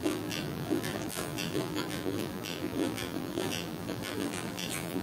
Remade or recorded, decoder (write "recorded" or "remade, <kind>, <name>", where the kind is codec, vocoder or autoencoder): remade, vocoder, BigVGAN v2